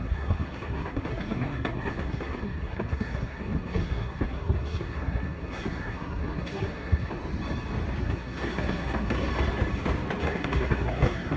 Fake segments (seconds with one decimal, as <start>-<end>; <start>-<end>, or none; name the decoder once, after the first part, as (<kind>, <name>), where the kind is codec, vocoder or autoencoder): 0.0-7.2 (codec, SNAC); 8.0-9.3; 10.2-11.4